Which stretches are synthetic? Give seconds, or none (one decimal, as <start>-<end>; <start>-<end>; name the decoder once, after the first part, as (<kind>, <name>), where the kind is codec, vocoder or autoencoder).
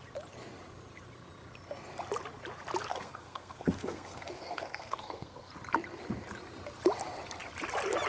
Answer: 2.9-5.5 (codec, SNAC)